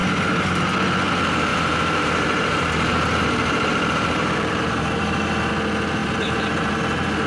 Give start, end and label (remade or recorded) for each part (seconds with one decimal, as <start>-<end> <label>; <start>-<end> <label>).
0.0-1.5 recorded; 1.5-5.5 remade; 5.5-6.0 recorded; 6.0-6.8 remade; 6.8-7.3 recorded